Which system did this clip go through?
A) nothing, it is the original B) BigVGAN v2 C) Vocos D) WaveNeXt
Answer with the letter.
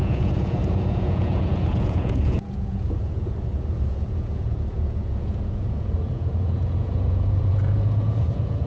C